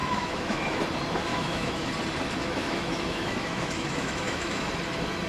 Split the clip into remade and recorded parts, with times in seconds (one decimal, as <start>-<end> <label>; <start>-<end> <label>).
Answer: 0.0-0.8 remade; 0.8-1.3 recorded; 1.3-1.9 remade; 1.9-2.4 recorded; 2.4-4.7 remade; 4.7-5.3 recorded